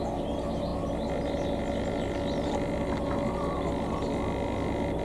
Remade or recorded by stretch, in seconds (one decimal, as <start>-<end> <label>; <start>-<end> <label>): 0.0-5.0 recorded